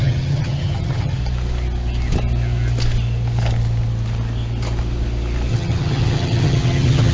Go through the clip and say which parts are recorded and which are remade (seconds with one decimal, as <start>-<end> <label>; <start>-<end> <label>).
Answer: 0.0-1.2 remade; 1.2-5.5 recorded; 5.5-7.1 remade